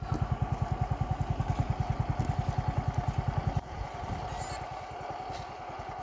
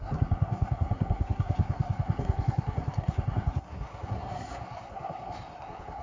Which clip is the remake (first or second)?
second